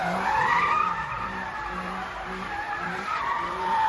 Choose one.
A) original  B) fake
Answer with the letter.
B